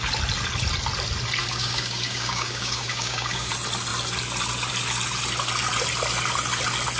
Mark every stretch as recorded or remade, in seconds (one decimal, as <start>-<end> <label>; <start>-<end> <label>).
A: 0.0-1.4 recorded; 1.4-3.5 remade; 3.5-7.0 recorded